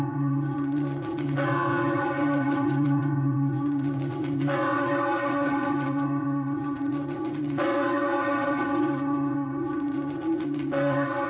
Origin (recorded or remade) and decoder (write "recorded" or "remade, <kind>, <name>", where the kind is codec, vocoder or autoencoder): remade, vocoder, WaveNeXt